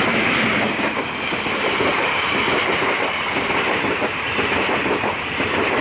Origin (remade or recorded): recorded